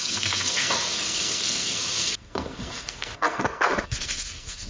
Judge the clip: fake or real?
fake